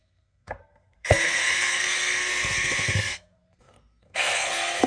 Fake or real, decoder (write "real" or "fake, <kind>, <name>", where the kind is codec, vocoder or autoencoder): fake, codec, SNAC